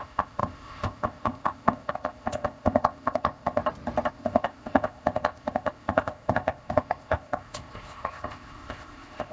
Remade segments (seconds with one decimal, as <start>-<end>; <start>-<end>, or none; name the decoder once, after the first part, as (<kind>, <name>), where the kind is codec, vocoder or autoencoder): 0.0-3.6 (codec, ZipCodec); 4.1-9.3